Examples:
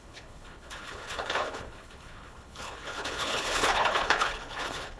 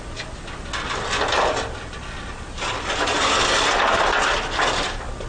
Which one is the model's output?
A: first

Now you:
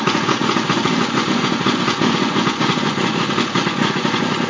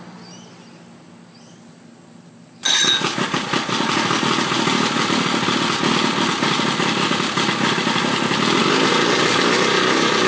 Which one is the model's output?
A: first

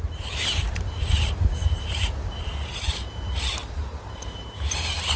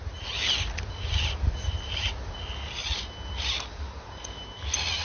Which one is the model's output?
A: first